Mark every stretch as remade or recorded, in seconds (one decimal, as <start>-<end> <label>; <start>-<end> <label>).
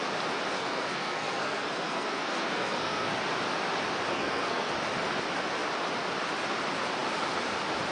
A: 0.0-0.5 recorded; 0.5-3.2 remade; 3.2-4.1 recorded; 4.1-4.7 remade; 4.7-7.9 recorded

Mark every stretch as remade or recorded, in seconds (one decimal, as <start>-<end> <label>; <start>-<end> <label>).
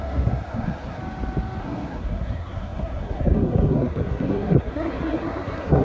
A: 0.0-1.0 remade; 1.0-1.6 recorded; 1.6-5.8 remade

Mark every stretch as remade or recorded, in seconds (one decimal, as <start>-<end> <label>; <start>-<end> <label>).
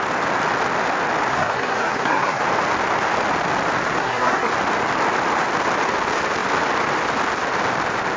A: 0.0-1.3 recorded; 1.3-2.4 remade; 2.4-4.0 recorded; 4.0-4.5 remade; 4.5-8.2 recorded